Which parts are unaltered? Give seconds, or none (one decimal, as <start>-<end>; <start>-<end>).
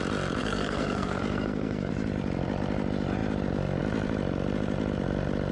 0.0-0.4; 1.9-5.5